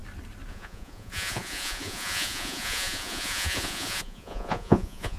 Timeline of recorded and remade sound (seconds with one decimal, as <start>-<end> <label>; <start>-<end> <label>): 0.0-0.5 recorded; 0.5-5.2 remade